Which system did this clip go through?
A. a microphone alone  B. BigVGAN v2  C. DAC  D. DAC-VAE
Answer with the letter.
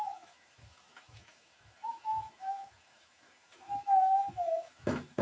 D